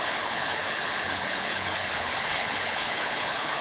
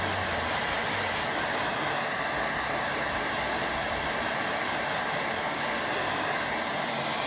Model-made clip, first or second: first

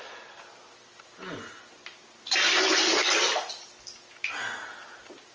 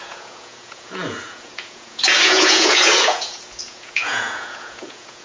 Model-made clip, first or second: second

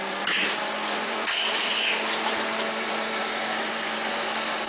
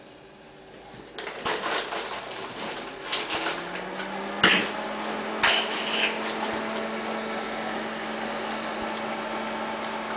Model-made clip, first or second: first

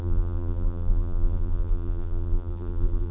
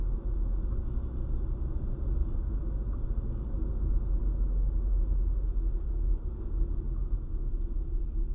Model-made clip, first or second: first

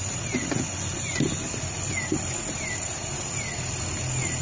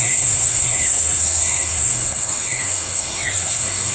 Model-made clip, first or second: second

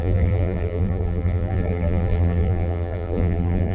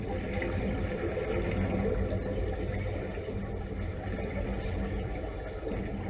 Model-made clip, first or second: first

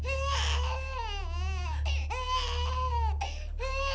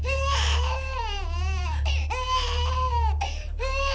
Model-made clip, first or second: second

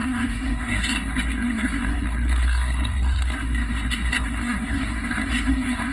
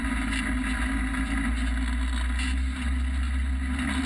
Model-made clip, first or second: first